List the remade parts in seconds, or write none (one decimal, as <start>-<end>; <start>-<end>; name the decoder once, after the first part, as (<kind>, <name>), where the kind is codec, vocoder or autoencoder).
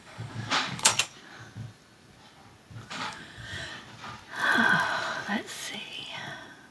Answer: 0.0-0.9 (codec, DAC); 2.9-3.7